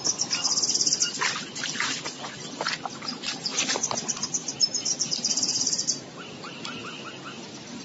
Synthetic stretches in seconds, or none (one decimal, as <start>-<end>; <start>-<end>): 2.9-6.8